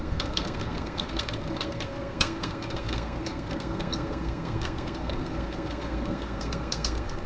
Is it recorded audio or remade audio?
remade